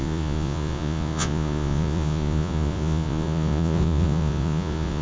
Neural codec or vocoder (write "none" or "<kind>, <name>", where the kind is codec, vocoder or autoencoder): vocoder, Vocos